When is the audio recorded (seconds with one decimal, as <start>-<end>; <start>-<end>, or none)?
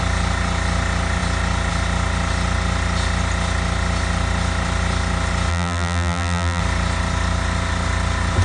0.0-5.5; 6.6-8.4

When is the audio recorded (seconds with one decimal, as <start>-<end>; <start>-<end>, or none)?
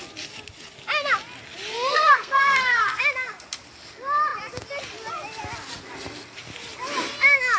0.0-1.7; 3.0-7.6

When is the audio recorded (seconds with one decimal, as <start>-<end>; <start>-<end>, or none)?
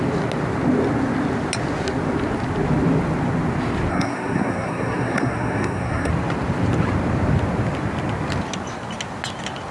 0.0-3.9; 6.1-9.7